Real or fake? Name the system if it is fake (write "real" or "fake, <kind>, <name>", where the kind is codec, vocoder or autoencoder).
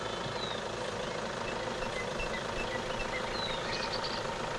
real